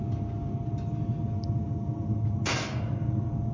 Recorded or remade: recorded